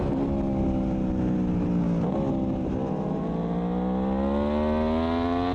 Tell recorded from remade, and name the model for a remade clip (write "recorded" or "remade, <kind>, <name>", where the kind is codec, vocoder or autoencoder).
recorded